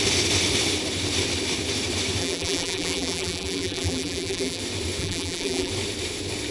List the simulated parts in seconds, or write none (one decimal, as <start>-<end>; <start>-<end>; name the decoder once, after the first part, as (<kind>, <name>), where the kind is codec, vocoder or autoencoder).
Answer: 2.2-4.6 (vocoder, BigVGAN v2); 5.0-5.7